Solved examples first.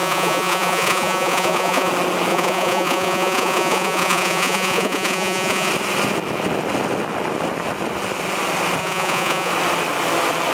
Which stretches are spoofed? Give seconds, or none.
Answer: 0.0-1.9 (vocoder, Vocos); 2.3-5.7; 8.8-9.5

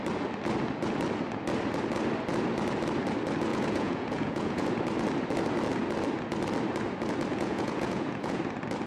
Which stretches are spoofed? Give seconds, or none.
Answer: 3.5-4.7 (vocoder, Vocos); 7.3-8.4

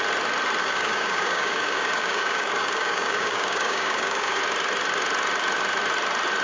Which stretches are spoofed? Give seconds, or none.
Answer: 0.6-4.4 (codec, DAC)

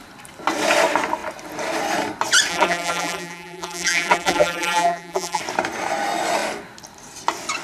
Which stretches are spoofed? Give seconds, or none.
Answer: 2.5-5.4 (vocoder, BigVGAN v2)